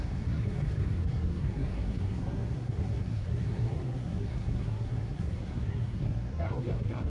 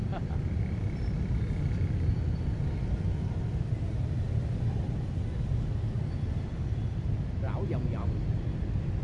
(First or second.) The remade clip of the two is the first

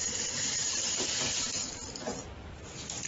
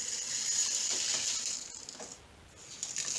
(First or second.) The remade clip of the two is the first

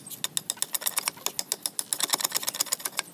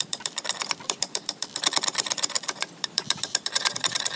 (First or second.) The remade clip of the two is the second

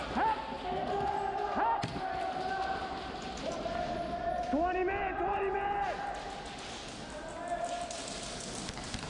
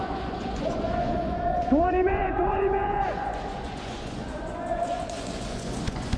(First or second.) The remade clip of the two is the second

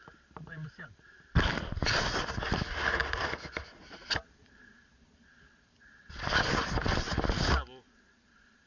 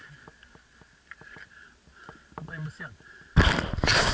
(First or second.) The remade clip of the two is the first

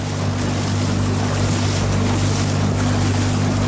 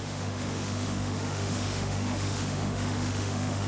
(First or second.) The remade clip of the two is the second